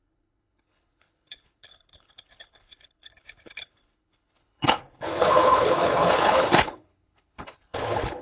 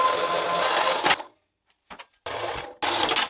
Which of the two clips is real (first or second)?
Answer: second